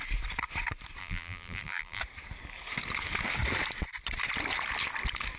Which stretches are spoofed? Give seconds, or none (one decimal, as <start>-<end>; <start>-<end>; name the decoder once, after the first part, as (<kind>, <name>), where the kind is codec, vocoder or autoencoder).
1.0-2.0 (vocoder, BigVGAN v2)